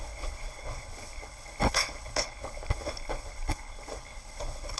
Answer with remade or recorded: remade